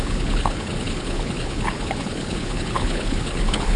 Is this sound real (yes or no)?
no